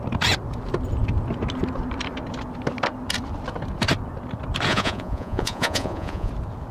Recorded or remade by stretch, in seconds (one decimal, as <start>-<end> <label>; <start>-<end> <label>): 0.0-4.7 recorded; 4.7-6.3 remade; 6.3-6.7 recorded

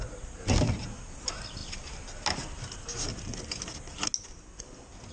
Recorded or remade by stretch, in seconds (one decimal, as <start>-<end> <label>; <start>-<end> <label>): 0.0-5.1 recorded

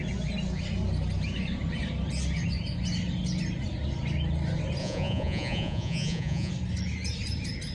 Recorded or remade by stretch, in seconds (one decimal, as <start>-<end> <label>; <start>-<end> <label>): 0.0-4.8 recorded; 4.8-6.5 remade; 6.5-7.7 recorded

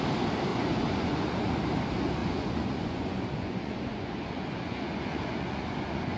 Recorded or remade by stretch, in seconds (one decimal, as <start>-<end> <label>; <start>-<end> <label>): 0.0-0.5 recorded; 0.5-1.5 remade; 1.5-2.2 recorded; 2.2-6.2 remade